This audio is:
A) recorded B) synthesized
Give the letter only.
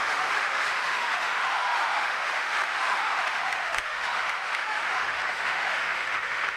B